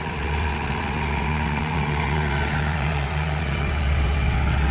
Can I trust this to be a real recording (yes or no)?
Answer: no